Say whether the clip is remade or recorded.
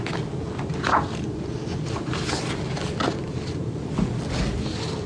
recorded